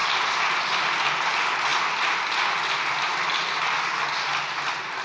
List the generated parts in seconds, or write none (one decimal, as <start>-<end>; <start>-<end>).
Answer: none